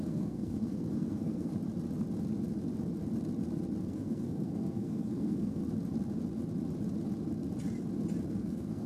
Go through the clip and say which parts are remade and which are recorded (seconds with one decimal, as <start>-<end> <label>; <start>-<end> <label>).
0.0-1.5 remade; 1.5-3.8 recorded; 3.8-5.6 remade; 5.6-8.3 recorded; 8.3-8.9 remade